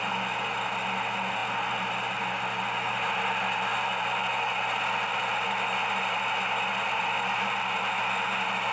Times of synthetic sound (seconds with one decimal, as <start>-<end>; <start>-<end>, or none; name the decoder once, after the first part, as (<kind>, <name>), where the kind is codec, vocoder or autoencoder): none